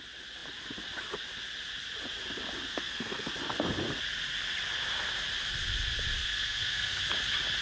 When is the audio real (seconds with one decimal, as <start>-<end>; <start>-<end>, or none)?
0.0-2.7; 3.3-6.2; 7.0-7.6